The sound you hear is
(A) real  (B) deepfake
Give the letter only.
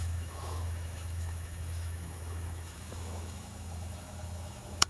B